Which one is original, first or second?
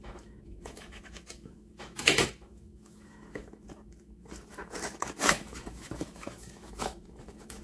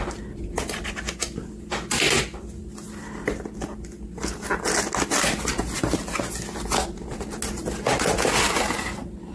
second